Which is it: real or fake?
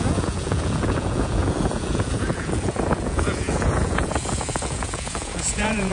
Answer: fake